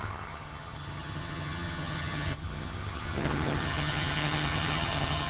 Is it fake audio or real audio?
fake